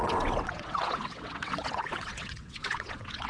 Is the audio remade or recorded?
remade